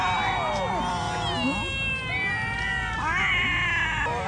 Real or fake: real